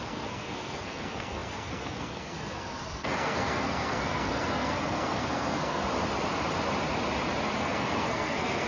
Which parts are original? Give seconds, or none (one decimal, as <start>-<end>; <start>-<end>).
5.8-7.6